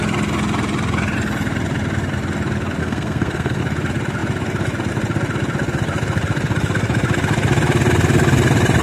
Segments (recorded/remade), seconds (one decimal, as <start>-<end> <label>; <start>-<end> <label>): 0.0-2.8 recorded; 2.8-3.6 remade; 3.6-8.8 recorded